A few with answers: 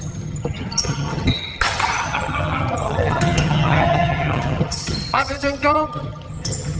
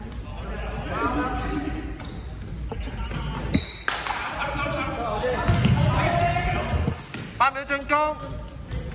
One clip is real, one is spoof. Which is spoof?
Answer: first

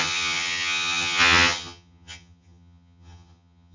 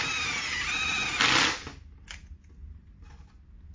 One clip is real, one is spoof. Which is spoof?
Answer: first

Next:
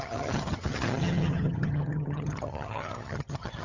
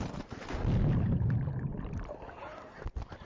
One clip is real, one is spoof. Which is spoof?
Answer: first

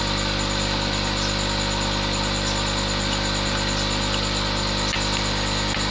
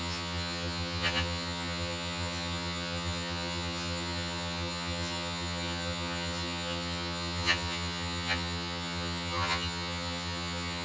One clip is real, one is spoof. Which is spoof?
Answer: second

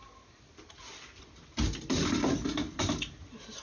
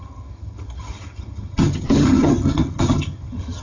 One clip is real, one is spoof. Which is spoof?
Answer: second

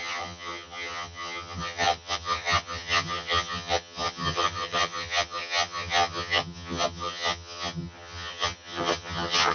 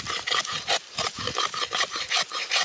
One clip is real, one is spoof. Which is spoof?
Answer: first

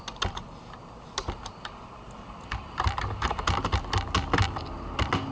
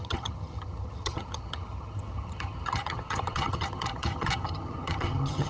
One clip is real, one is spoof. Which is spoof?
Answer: second